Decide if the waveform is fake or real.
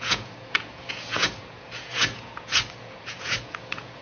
fake